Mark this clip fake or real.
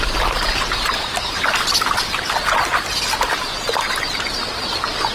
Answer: real